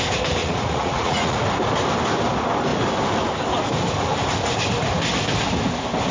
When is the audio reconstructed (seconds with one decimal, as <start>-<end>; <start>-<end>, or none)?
0.4-1.4